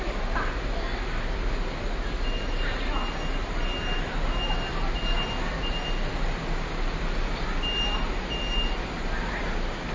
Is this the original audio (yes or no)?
yes